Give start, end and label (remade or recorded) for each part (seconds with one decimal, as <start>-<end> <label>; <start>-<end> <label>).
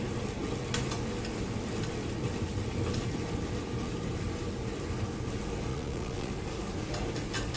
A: 0.0-5.7 recorded; 5.7-6.3 remade; 6.3-7.6 recorded